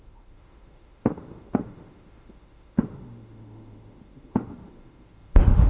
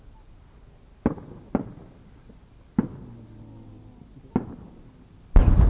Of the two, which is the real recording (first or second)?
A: second